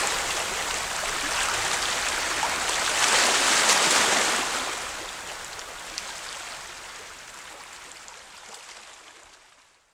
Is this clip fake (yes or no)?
no